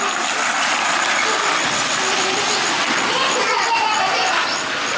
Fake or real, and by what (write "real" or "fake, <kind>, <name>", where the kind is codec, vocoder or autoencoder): real